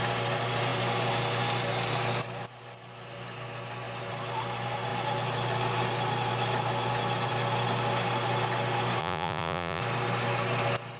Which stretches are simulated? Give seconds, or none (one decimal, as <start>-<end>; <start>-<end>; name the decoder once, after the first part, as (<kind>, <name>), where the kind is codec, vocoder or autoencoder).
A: 9.0-9.8 (vocoder, Vocos)